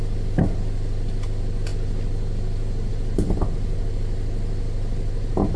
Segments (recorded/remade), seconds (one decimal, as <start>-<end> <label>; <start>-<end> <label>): 0.0-5.6 recorded